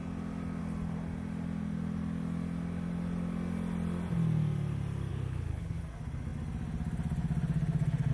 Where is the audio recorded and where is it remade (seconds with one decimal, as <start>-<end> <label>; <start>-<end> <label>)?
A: 0.0-5.1 recorded; 5.1-5.8 remade; 5.8-8.1 recorded